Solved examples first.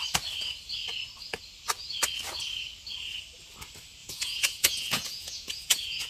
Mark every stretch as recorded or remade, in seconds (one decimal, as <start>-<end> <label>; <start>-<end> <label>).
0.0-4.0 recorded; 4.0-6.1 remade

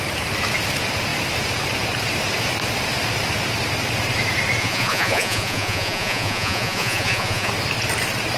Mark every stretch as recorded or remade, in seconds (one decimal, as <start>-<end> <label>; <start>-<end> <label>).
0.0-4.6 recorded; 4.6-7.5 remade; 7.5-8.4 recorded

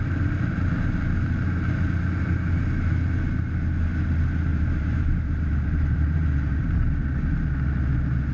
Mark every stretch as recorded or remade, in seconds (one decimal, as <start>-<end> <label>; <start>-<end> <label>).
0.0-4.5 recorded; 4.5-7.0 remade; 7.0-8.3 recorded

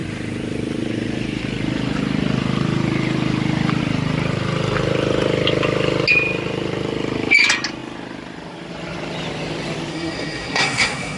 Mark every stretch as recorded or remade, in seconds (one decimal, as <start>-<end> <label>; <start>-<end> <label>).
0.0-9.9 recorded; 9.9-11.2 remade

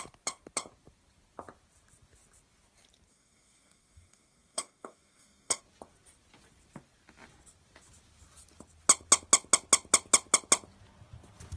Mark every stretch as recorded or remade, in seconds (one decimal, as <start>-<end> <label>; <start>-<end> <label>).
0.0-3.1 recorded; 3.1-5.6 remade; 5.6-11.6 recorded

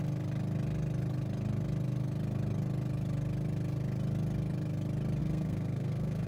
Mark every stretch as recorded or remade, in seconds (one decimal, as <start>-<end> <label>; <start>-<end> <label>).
0.0-5.2 recorded; 5.2-6.3 remade